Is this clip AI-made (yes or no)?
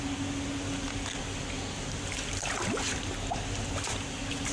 no